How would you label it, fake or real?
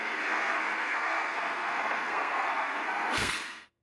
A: fake